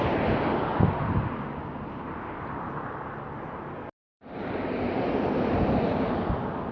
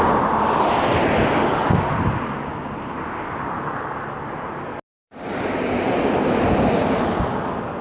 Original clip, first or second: second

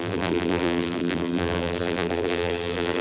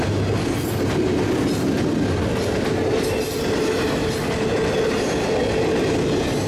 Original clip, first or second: second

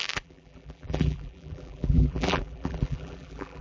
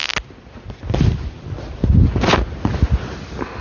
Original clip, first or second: second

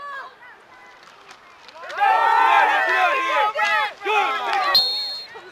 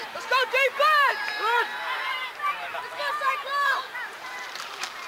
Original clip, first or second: first